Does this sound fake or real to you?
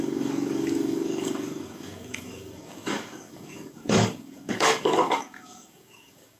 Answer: fake